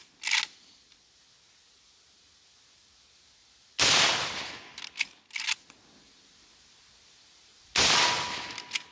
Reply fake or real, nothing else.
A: real